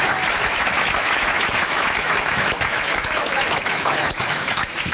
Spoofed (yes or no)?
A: yes